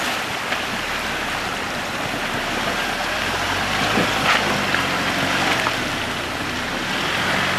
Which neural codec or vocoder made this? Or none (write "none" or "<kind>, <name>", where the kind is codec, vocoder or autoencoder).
none